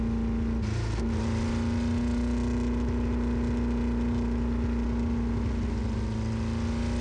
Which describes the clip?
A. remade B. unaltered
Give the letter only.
B